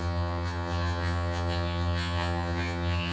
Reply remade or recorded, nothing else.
remade